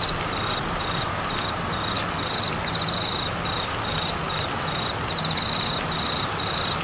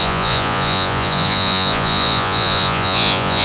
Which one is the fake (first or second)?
second